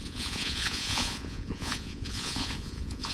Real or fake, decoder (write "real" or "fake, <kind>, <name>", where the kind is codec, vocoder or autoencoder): fake, vocoder, Vocos